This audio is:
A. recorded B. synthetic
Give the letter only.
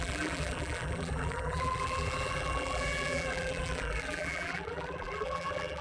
B